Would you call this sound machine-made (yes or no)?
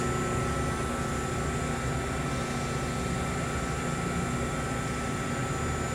no